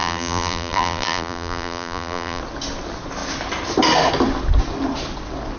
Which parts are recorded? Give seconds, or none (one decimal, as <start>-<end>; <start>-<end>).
2.4-5.6